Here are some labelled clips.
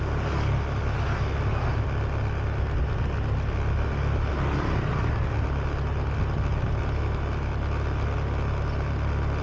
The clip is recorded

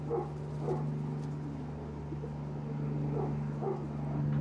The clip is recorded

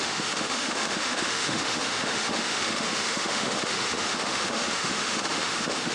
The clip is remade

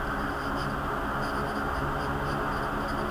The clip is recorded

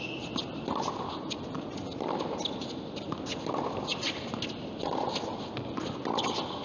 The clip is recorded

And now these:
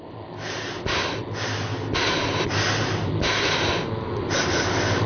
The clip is recorded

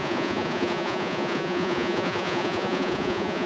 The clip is remade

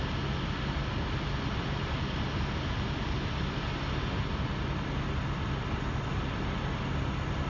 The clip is recorded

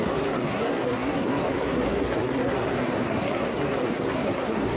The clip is remade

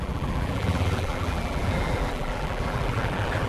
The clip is remade